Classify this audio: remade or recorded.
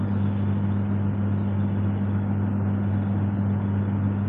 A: recorded